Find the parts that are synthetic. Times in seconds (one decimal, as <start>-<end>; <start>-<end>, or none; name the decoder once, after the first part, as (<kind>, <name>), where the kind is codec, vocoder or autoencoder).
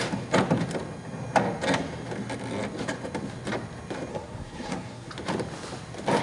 4.1-5.1 (codec, SNAC)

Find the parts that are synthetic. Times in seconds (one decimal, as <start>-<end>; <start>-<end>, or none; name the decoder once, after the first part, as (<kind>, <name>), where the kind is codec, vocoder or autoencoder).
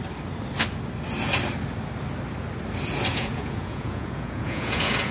3.1-5.1 (vocoder, Vocos)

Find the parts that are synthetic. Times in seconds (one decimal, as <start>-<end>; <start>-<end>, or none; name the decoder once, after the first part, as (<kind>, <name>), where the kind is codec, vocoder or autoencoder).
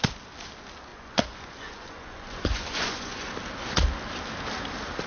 0.9-3.3 (vocoder, Vocos)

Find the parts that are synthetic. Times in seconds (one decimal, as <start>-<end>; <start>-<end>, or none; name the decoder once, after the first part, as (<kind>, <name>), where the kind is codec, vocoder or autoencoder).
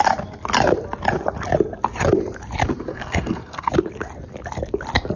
2.9-3.7 (codec, SNAC)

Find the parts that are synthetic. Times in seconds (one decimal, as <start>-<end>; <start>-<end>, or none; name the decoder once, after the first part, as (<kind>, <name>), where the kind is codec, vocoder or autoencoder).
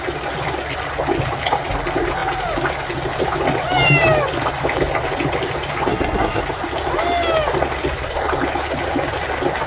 5.9-6.4 (codec, SNAC)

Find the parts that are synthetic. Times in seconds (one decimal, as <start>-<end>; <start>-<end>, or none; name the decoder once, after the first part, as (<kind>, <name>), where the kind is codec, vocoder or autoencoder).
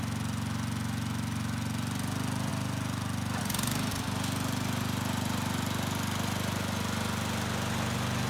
none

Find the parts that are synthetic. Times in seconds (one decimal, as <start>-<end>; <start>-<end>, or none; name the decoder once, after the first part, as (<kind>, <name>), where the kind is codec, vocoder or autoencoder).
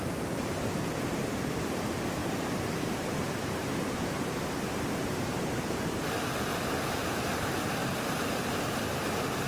2.2-6.0 (vocoder, BigVGAN v2)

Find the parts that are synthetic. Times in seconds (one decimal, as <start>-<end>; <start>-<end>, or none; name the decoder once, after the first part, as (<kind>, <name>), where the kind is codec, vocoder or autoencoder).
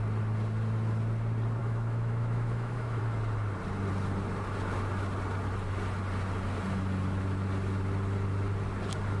1.6-3.0 (autoencoder, DAC-VAE)